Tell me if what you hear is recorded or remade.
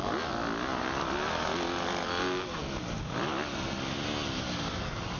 recorded